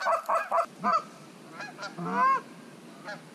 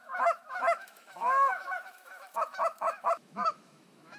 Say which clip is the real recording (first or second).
first